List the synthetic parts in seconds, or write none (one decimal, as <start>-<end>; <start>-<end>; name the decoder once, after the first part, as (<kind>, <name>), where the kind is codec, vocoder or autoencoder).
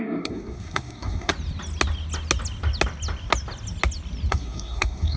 0.0-1.3 (codec, SNAC); 4.3-5.2